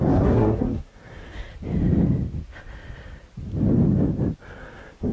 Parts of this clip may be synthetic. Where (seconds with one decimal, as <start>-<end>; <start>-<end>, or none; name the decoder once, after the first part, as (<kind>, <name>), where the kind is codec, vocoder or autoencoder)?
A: 0.0-1.5 (codec, SNAC); 4.6-5.1